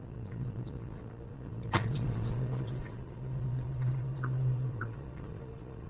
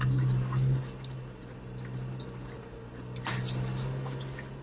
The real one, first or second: second